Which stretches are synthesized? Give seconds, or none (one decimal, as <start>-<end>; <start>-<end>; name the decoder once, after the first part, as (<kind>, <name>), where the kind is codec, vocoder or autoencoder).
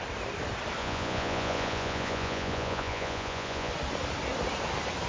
0.8-3.7 (vocoder, Vocos)